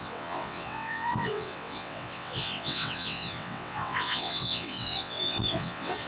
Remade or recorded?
remade